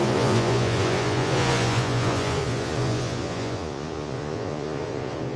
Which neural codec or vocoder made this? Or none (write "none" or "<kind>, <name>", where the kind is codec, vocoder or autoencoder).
vocoder, Vocos